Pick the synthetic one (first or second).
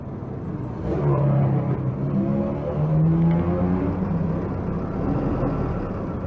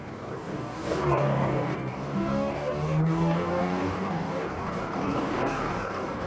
second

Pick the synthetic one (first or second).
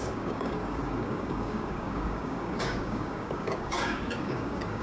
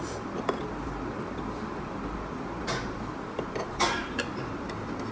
first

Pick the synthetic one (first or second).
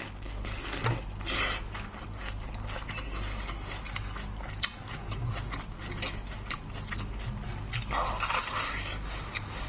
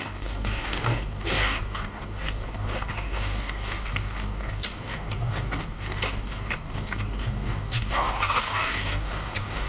second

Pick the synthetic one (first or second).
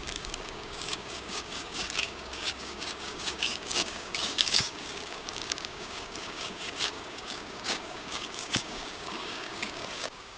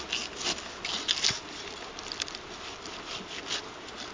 first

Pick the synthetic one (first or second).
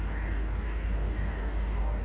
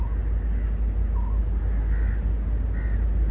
first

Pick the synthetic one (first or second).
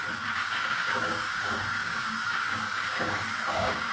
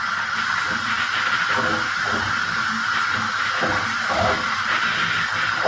first